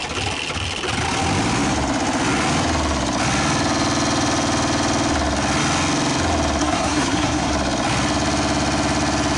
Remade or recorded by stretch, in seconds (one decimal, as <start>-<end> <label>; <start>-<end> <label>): 0.0-6.6 recorded; 6.6-7.5 remade; 7.5-9.4 recorded